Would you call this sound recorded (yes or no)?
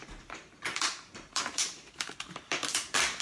no